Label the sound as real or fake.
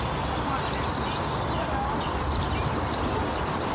real